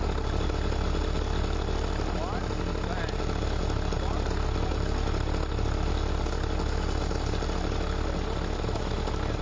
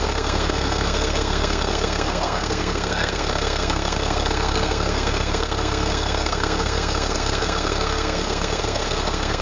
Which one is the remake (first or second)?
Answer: second